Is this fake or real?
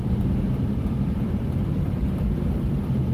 fake